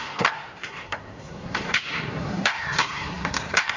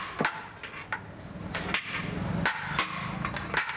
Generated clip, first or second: first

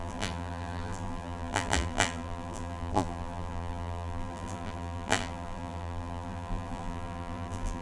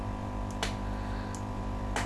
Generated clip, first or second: first